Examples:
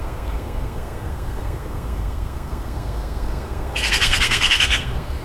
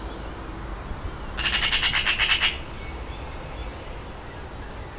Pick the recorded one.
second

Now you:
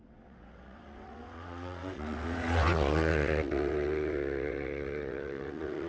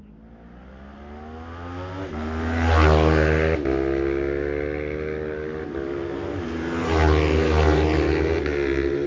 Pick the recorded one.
second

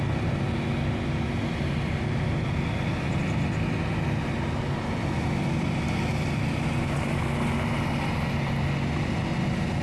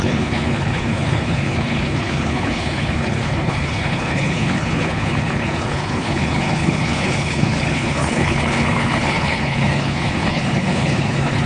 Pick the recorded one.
first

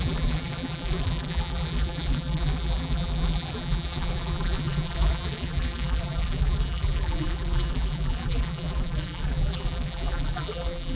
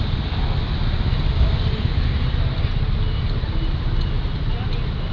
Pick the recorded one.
second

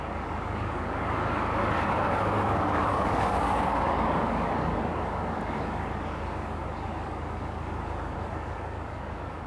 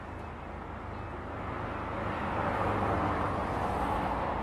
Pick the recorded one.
second